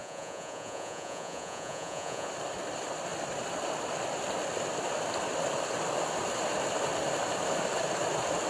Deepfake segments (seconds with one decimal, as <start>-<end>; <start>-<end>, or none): 0.0-2.3